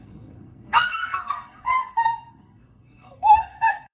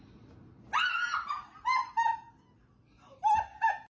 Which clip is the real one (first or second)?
second